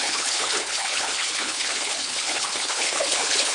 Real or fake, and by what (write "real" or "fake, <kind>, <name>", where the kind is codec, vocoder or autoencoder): fake, codec, HILCodec